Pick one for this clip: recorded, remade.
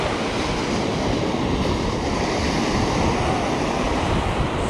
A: recorded